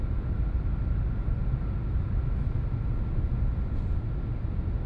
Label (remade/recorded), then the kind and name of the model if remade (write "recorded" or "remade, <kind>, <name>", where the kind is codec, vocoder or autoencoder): recorded